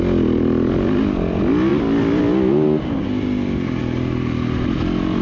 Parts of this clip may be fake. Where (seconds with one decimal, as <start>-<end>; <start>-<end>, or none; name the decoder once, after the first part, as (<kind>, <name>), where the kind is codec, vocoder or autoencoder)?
none